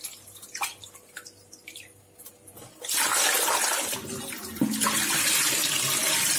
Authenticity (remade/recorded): recorded